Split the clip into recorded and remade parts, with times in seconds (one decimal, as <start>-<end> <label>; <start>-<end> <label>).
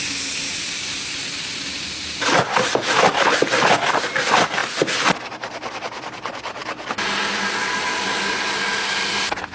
0.0-9.5 recorded